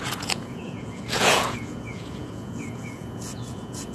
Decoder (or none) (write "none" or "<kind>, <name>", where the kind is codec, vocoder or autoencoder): vocoder, Vocos